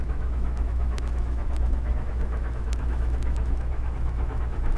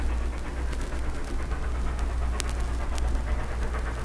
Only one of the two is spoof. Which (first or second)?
first